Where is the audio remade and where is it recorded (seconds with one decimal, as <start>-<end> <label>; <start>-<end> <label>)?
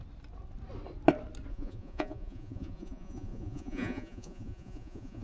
0.0-1.5 recorded; 1.5-5.2 remade